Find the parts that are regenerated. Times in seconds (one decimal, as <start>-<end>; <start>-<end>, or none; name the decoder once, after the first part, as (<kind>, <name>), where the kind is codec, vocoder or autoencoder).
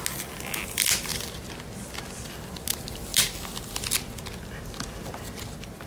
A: none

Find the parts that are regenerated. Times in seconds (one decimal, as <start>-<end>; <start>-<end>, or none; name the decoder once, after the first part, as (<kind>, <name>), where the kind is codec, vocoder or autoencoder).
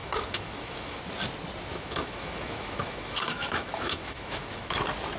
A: 0.0-1.0 (autoencoder, DAC-VAE); 1.7-4.8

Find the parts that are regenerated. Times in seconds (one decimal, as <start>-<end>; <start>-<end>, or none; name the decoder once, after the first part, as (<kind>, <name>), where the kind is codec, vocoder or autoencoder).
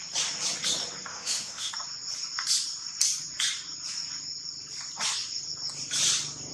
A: 1.1-1.7 (autoencoder, DAC-VAE)